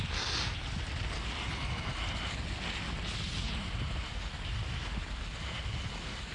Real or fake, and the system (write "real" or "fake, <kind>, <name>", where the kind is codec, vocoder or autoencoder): real